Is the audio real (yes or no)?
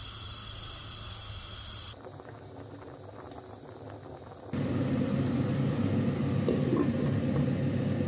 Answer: yes